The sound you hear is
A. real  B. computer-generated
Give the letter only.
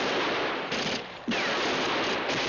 A